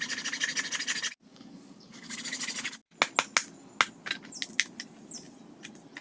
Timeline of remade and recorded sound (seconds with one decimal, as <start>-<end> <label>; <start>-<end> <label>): 0.0-1.3 recorded; 1.3-2.2 remade; 2.2-6.0 recorded

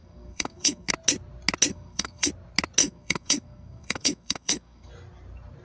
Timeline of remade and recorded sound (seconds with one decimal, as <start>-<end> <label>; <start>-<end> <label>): 0.0-0.9 remade; 0.9-1.7 recorded; 1.7-2.3 remade; 2.3-2.8 recorded; 2.8-4.9 remade; 4.9-5.6 recorded